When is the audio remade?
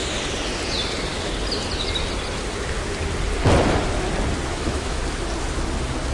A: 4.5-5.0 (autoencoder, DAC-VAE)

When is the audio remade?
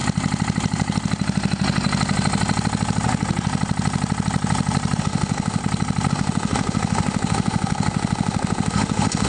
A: 5.0-5.6 (autoencoder, DAC-VAE); 6.1-9.3